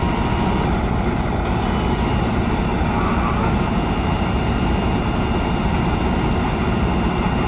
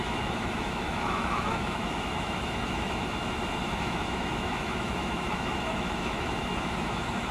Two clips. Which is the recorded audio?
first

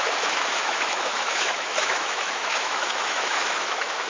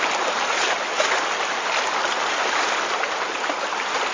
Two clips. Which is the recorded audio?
second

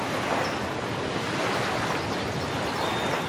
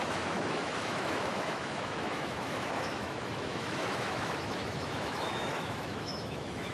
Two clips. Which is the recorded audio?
first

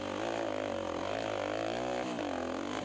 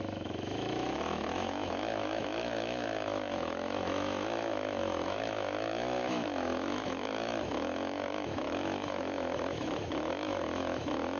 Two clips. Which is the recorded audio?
first